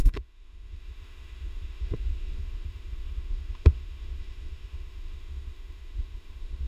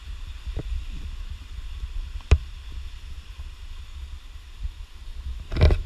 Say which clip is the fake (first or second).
first